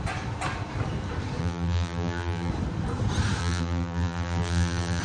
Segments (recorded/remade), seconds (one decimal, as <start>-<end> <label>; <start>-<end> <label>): 0.0-1.4 recorded; 1.4-2.5 remade; 2.5-3.4 recorded; 3.4-5.0 remade